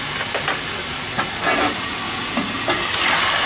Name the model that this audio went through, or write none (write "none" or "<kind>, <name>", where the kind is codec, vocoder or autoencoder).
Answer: none